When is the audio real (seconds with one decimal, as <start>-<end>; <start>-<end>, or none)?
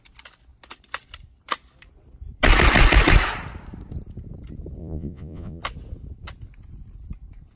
0.0-4.8; 5.6-7.6